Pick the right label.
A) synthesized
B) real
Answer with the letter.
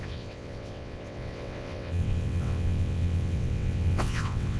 A